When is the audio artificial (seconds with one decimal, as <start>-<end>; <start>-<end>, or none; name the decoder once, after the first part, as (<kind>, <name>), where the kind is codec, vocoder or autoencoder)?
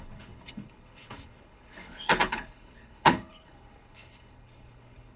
0.0-5.2 (codec, HILCodec)